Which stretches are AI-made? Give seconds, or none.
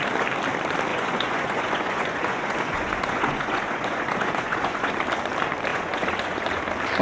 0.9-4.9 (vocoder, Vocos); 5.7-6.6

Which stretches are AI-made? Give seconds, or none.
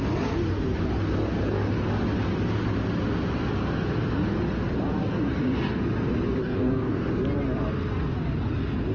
6.4-7.1 (codec, DAC)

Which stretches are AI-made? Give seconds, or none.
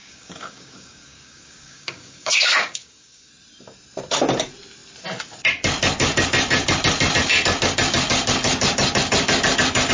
0.0-3.3 (codec, DAC)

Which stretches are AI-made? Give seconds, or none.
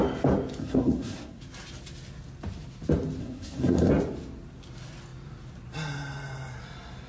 0.6-1.4 (codec, SNAC); 3.2-3.9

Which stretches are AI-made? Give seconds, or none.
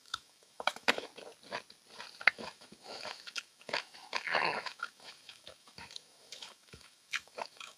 0.0-1.1 (autoencoder, DAC-VAE); 2.3-7.8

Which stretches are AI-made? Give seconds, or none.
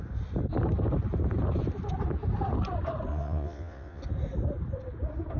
3.1-4.0 (vocoder, WaveNeXt)